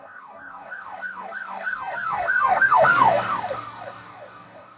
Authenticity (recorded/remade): remade